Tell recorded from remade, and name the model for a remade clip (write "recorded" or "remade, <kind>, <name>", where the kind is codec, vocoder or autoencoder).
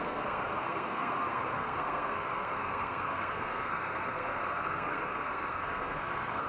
remade, codec, SNAC